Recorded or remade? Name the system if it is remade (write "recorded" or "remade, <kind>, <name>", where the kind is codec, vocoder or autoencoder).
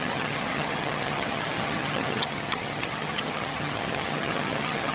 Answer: remade, vocoder, HiFi-GAN